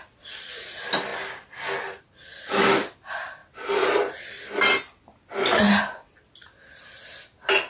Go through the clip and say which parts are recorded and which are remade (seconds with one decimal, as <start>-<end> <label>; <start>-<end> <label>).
0.0-7.7 recorded